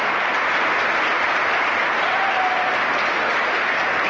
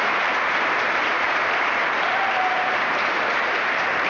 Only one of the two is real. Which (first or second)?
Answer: first